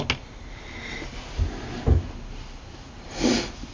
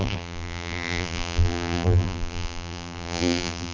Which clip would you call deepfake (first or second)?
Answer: second